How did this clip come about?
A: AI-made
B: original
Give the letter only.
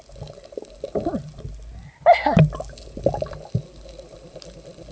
B